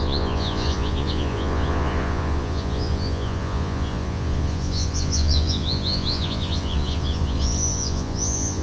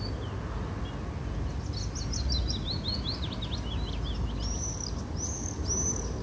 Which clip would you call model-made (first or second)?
first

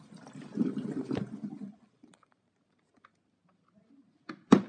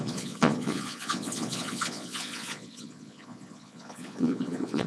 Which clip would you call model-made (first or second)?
second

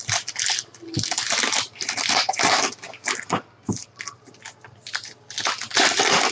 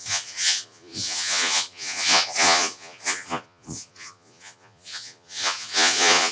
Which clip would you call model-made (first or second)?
second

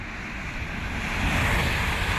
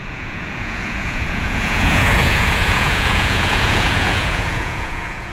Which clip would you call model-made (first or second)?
second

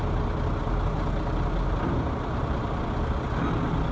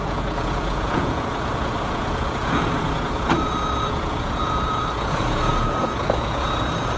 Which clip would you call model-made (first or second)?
second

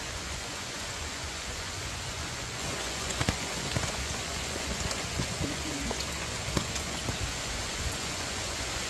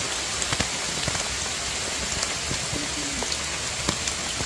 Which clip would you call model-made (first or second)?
first